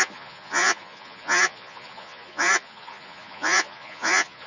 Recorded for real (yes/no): no